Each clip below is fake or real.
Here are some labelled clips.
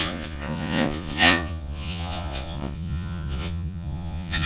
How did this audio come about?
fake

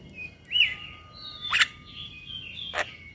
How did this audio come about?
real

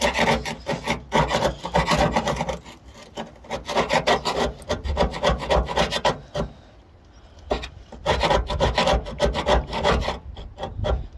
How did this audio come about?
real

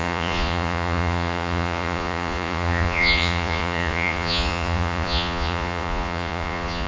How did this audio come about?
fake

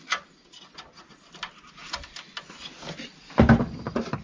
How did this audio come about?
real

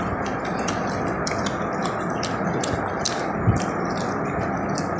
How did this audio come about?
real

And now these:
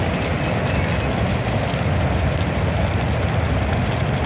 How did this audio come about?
real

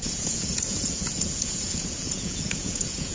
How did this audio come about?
fake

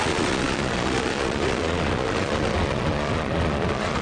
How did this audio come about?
fake